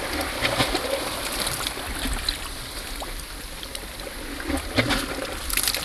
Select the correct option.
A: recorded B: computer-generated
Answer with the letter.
A